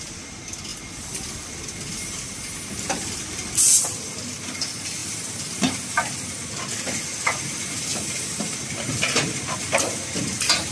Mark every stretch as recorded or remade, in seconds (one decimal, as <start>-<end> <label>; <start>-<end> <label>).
0.0-10.7 recorded